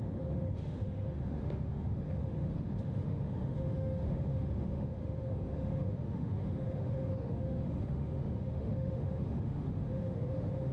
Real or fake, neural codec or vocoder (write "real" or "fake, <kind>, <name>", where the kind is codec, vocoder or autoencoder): fake, autoencoder, DAC-VAE